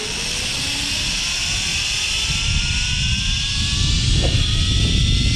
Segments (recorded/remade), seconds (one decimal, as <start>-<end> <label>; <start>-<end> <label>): 0.0-5.4 recorded